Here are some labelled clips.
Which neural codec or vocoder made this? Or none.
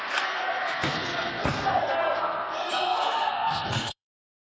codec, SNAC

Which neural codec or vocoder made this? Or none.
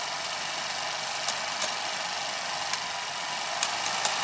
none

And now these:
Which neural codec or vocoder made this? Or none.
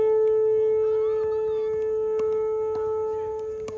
none